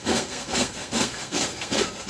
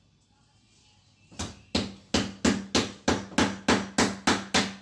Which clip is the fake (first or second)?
first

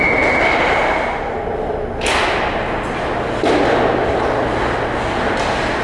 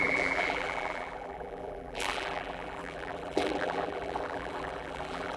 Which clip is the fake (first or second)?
second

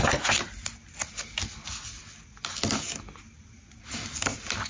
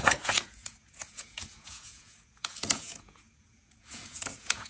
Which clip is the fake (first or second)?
second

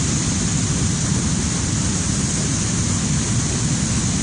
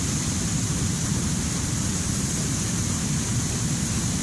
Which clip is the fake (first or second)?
second